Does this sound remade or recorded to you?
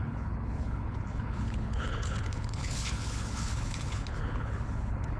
remade